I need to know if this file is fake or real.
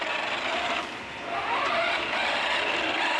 real